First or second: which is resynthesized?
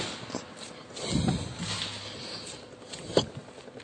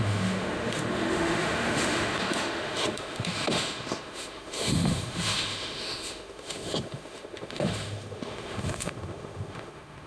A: second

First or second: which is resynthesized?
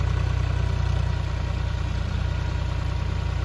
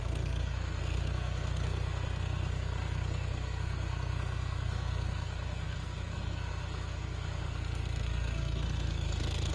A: second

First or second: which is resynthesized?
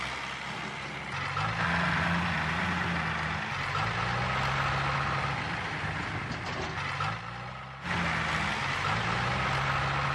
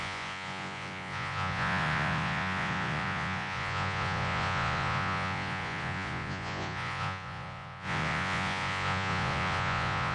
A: second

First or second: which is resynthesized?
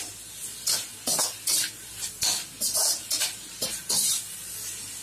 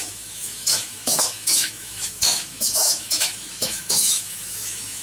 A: second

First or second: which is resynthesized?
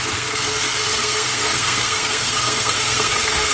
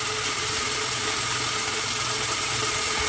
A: first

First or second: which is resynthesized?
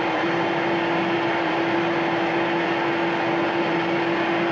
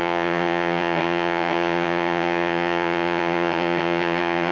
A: second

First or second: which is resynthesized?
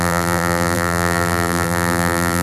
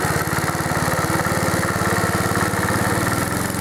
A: first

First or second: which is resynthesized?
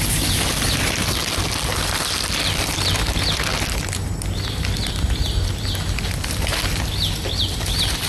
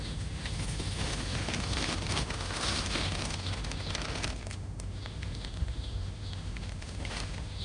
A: second